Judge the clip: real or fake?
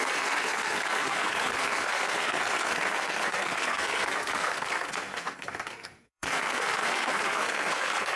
fake